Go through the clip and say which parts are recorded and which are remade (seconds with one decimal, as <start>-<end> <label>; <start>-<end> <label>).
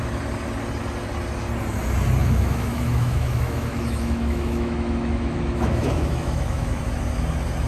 0.0-2.2 recorded; 2.2-6.8 remade; 6.8-7.7 recorded